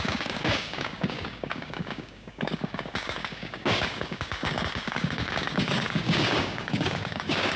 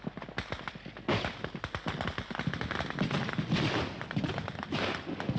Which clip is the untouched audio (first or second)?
second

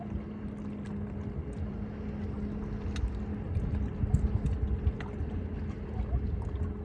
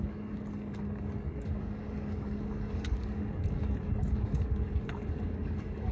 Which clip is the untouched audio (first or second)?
first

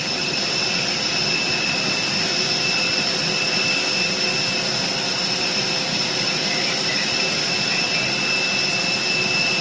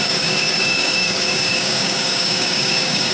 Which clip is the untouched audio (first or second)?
first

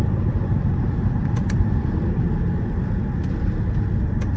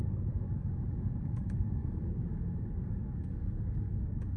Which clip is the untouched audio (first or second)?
first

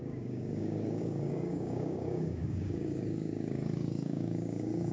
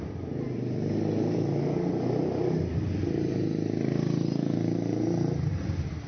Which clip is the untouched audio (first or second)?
second